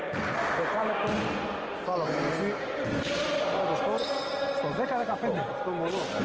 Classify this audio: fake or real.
real